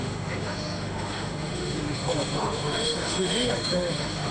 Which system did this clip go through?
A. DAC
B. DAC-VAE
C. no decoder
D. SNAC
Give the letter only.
B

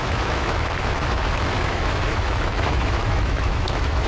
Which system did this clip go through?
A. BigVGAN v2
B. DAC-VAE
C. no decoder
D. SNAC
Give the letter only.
B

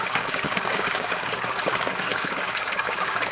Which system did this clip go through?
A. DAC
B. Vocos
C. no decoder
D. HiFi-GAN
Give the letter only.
A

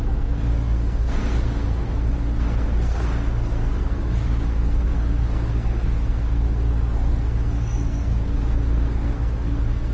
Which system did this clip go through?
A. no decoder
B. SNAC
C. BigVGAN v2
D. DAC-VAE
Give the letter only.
B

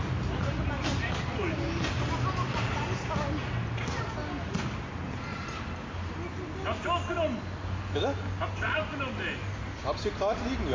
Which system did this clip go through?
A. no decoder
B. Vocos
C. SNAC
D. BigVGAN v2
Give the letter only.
A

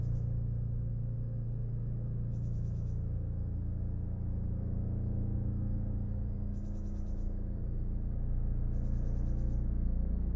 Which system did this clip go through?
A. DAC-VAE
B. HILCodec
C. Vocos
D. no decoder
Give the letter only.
A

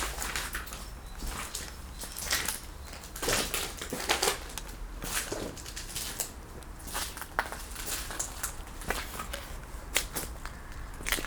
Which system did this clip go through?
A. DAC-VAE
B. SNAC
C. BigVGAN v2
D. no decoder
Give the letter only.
D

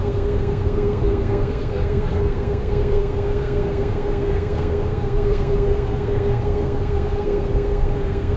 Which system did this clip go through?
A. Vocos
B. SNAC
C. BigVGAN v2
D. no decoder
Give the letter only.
B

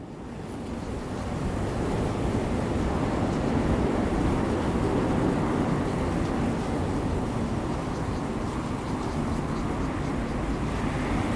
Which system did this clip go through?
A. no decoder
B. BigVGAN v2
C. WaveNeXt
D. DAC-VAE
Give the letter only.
A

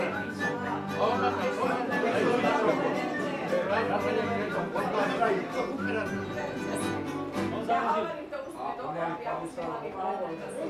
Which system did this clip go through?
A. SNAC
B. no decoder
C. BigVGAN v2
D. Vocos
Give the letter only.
B